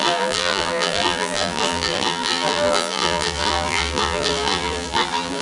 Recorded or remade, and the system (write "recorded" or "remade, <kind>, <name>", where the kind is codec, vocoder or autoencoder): remade, vocoder, BigVGAN v2